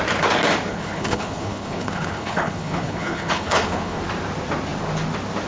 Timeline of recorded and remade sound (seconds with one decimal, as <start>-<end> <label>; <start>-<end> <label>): 0.0-0.7 recorded; 0.7-4.0 remade; 4.0-5.5 recorded